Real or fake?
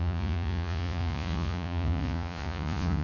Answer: fake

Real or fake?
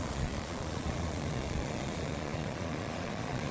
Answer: fake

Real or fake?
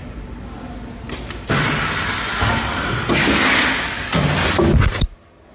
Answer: real